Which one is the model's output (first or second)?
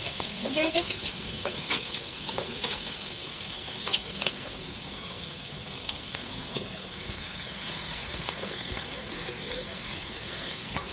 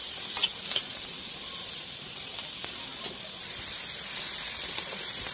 first